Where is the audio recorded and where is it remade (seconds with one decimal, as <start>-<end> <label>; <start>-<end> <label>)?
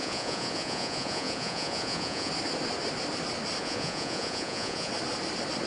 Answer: 0.0-2.3 remade; 2.3-3.6 recorded; 3.6-4.9 remade; 4.9-5.7 recorded